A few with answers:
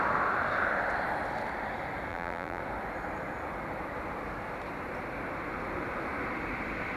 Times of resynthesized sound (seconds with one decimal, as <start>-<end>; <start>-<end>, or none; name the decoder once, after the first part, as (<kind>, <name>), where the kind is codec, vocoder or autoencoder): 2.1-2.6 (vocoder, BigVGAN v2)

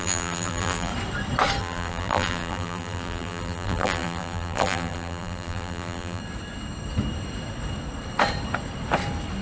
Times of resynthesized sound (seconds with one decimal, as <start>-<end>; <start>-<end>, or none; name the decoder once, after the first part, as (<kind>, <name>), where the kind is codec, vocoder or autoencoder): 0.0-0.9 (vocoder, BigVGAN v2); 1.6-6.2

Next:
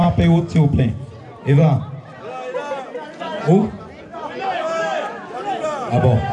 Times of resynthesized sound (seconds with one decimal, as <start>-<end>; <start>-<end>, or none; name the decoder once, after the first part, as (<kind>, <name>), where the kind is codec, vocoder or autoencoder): 4.1-4.8 (vocoder, BigVGAN v2)